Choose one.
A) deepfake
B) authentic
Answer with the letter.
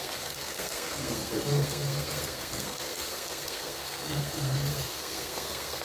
A